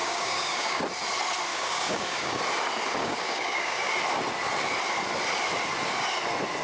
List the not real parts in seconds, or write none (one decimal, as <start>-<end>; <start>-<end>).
0.0-0.8; 1.5-2.4; 3.0-3.9